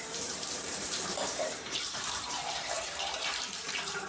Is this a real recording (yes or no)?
no